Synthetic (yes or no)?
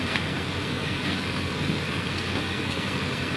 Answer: yes